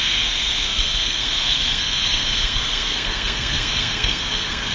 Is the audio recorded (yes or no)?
no